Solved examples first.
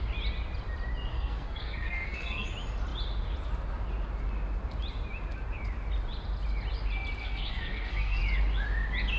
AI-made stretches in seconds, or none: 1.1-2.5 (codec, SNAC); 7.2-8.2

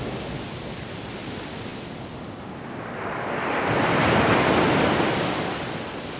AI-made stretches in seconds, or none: none

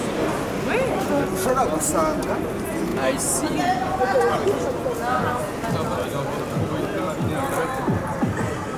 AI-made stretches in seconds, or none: none

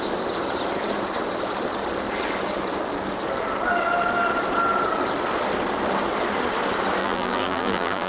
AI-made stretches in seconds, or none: 7.0-8.1 (vocoder, BigVGAN v2)

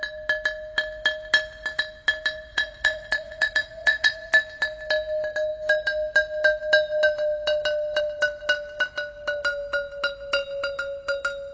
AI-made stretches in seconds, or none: 2.5-4.3 (vocoder, Vocos)

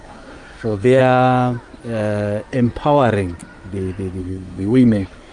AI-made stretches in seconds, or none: 0.0-1.0 (codec, SNAC); 4.2-5.3

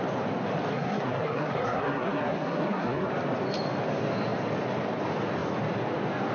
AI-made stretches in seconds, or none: 0.7-3.1 (codec, SNAC)

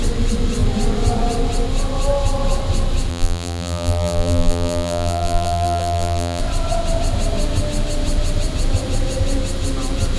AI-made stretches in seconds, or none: 3.1-6.4 (vocoder, BigVGAN v2)